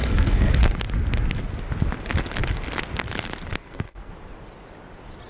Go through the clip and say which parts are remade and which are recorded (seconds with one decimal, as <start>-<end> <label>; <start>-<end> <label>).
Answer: 0.0-0.8 remade; 0.8-3.6 recorded; 3.6-4.1 remade; 4.1-5.3 recorded